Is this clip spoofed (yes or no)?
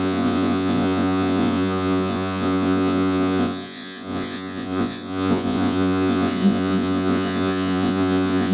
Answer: yes